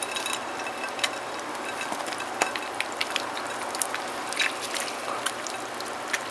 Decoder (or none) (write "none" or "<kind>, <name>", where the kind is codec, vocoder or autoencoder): none